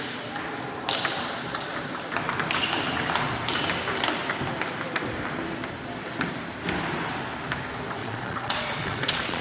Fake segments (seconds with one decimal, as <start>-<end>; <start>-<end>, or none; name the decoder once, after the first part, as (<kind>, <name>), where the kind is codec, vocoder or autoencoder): 8.0-9.4 (vocoder, Vocos)